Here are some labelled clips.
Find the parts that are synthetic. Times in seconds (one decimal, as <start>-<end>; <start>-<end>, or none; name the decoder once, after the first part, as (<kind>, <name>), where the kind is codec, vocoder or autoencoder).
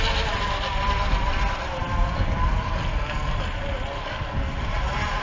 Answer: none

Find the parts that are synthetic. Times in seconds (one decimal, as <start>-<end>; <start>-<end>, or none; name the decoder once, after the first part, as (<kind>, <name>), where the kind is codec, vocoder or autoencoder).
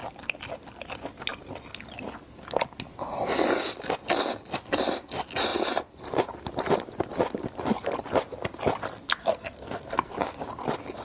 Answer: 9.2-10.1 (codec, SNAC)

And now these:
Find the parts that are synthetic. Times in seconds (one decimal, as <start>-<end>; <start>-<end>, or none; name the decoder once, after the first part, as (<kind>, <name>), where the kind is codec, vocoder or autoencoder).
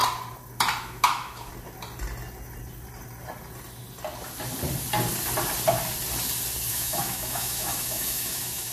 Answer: 0.8-1.5 (autoencoder, DAC-VAE); 6.7-8.7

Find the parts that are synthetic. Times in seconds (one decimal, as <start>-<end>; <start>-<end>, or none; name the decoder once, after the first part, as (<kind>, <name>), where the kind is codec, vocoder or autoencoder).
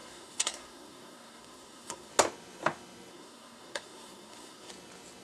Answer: 0.0-2.1 (codec, SNAC); 3.1-4.7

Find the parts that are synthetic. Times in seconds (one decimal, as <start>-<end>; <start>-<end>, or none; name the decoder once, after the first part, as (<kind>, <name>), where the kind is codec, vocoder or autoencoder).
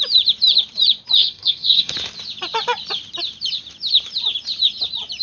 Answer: 1.2-1.9 (codec, SNAC)